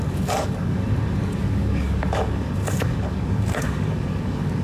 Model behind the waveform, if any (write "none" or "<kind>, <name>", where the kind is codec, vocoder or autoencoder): codec, DAC